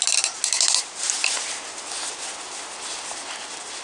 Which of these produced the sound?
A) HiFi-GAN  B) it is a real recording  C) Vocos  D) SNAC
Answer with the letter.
B